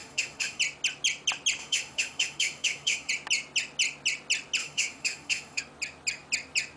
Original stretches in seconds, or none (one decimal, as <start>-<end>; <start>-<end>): 0.6-1.6; 3.1-4.6; 5.6-6.8